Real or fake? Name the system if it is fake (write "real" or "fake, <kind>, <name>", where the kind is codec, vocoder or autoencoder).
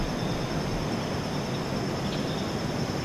real